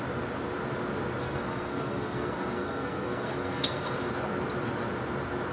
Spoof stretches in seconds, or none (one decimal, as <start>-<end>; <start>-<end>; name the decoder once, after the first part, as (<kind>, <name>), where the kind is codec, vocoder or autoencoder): 1.2-4.1 (codec, SNAC)